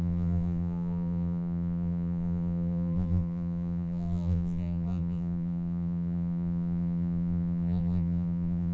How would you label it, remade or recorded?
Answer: remade